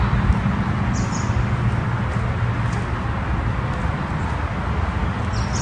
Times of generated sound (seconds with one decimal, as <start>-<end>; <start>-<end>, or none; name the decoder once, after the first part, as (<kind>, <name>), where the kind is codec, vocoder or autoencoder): none